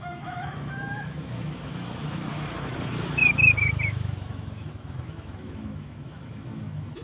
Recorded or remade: remade